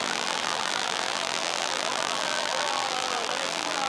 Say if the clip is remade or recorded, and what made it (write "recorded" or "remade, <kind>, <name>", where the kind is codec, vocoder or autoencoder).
remade, vocoder, BigVGAN v2